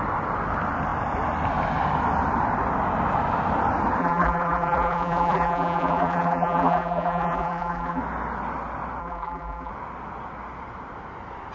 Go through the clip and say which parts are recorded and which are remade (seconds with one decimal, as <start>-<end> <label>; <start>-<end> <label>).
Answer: 0.0-4.0 recorded; 4.0-8.0 remade; 8.0-9.0 recorded; 9.0-9.7 remade; 9.7-11.5 recorded